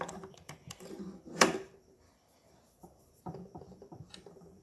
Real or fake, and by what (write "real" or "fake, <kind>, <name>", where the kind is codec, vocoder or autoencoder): fake, vocoder, BigVGAN v2